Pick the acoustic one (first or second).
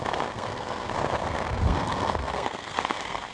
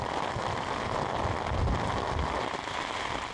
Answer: second